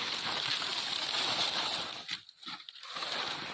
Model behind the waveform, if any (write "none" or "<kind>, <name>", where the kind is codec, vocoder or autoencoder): none